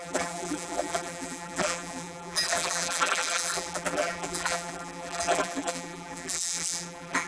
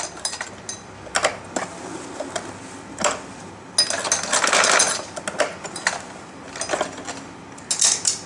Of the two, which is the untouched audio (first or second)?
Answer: second